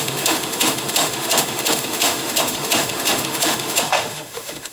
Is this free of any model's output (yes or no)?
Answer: no